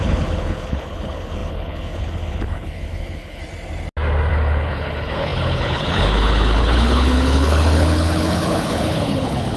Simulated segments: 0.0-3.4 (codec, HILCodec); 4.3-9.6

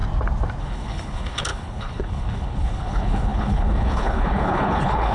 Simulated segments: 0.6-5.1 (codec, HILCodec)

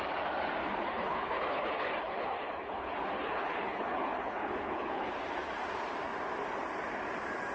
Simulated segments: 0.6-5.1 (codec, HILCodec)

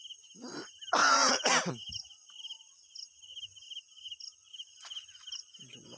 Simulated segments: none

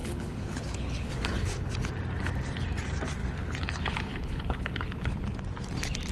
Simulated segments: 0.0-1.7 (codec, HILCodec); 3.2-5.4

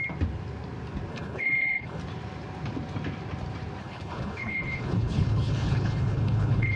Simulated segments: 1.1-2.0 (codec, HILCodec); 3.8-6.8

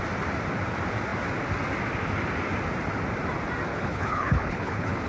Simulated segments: 3.7-5.1 (codec, HILCodec)